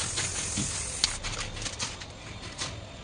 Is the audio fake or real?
real